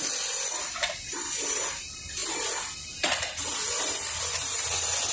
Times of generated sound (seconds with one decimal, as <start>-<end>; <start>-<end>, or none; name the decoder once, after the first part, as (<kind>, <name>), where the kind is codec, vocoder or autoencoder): none